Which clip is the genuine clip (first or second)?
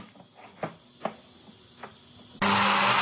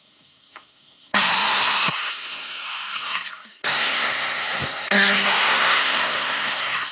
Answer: first